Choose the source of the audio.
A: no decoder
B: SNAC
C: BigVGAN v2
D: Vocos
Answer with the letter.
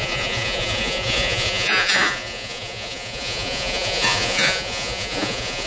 D